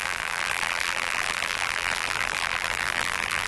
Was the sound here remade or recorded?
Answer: remade